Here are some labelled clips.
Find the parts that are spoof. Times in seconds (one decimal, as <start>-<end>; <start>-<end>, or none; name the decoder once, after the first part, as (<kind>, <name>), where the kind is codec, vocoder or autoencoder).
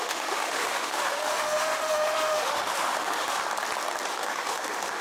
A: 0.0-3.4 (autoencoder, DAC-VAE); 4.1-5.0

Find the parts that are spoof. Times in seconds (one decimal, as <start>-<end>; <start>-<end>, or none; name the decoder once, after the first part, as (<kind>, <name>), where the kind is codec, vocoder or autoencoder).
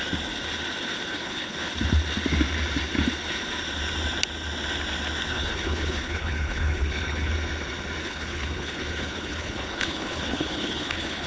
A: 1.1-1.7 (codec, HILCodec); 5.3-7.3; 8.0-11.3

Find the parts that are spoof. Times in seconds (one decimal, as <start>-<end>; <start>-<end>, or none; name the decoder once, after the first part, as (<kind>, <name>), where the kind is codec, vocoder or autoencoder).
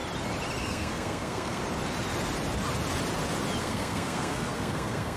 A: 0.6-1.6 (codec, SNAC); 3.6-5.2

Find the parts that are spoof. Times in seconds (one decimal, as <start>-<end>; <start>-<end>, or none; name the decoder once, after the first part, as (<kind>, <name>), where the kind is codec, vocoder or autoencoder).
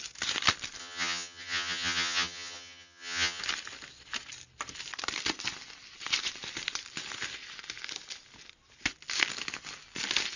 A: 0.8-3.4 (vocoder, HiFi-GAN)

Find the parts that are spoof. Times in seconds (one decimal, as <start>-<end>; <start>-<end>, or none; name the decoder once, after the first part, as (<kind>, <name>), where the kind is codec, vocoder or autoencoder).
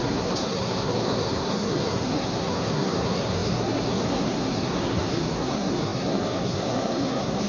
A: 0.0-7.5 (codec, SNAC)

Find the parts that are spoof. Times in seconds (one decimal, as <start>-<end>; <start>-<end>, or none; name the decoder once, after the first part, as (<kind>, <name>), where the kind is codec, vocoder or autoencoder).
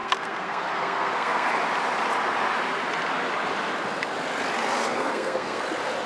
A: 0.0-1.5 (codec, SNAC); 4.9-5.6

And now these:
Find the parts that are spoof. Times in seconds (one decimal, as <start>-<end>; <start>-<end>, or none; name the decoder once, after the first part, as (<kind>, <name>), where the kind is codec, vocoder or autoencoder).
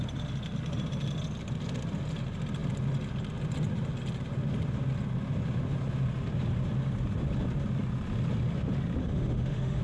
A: 9.0-9.8 (autoencoder, DAC-VAE)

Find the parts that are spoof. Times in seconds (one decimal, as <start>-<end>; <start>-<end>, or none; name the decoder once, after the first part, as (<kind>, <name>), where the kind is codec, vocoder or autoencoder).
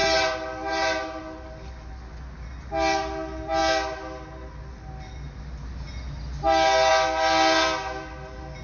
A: none